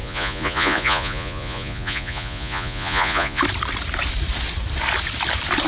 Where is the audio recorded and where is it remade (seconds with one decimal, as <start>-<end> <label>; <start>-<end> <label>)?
0.0-3.4 remade; 3.4-5.7 recorded